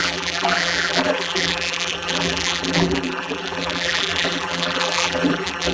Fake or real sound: fake